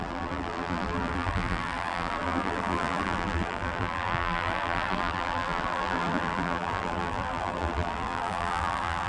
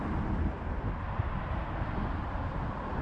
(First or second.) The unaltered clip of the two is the second